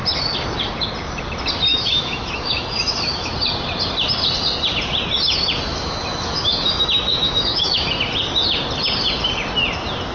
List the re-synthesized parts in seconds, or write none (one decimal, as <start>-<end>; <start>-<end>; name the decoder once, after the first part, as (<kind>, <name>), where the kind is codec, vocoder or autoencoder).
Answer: 1.7-3.3 (autoencoder, DAC-VAE); 5.7-7.9